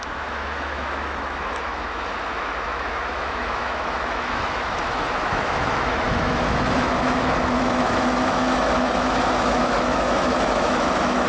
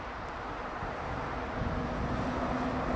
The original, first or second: second